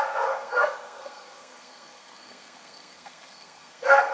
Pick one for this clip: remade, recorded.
remade